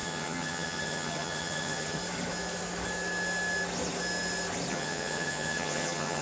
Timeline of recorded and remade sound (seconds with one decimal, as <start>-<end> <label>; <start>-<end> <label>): 0.0-2.0 remade; 2.0-4.7 recorded; 4.7-6.2 remade